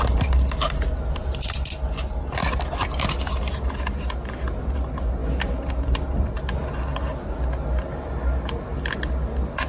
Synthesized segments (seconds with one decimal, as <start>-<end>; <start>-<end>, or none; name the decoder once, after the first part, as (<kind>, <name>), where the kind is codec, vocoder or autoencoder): none